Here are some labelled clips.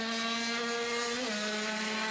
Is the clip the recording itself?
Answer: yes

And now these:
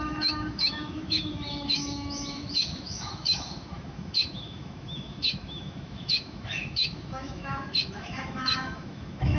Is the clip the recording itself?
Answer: no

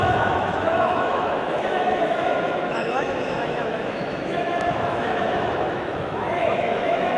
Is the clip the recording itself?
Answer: no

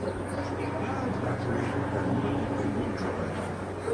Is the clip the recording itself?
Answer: yes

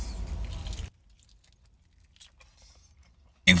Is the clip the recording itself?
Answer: yes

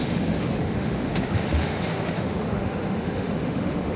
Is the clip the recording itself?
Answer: no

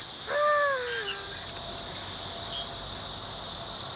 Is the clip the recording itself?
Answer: yes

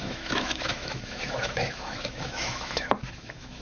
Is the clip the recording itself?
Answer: no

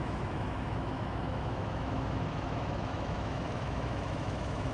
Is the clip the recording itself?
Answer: no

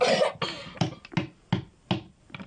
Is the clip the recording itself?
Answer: yes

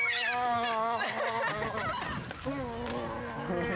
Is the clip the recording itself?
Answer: yes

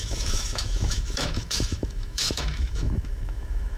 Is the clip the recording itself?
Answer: no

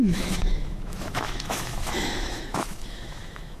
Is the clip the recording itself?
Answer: no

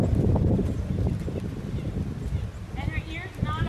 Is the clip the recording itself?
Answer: yes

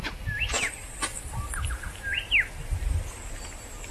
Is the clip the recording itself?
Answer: yes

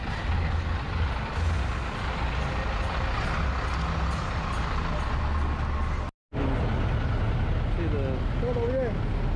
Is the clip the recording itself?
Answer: yes